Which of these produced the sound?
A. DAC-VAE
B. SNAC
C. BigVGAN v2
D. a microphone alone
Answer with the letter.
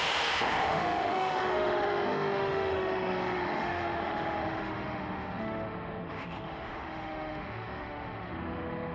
A